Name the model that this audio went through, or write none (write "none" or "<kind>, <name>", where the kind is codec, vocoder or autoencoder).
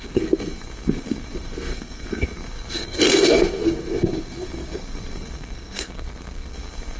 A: codec, SNAC